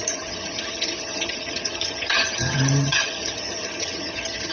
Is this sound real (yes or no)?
no